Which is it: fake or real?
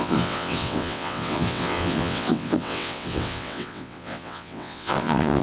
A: fake